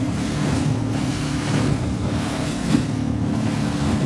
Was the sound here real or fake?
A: fake